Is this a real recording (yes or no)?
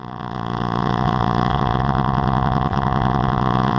no